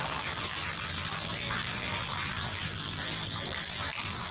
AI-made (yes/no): yes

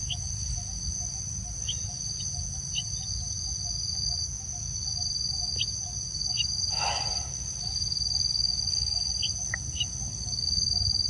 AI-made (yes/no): no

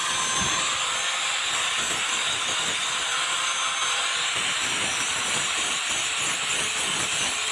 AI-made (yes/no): no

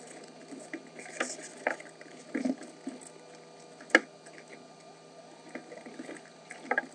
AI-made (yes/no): no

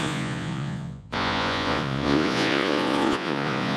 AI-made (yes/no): yes